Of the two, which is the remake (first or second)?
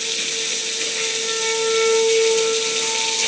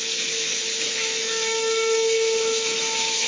second